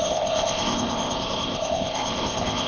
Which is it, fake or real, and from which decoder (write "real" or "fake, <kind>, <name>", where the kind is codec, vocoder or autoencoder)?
fake, codec, ZipCodec